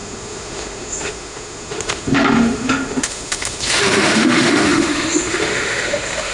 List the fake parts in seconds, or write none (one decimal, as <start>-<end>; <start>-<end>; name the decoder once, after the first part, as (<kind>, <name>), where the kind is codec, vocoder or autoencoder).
0.0-6.3 (autoencoder, DAC-VAE)